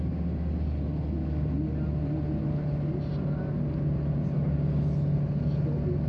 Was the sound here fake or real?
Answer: real